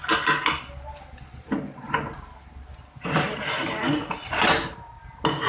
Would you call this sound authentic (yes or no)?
yes